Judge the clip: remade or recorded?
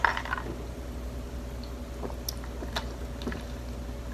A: recorded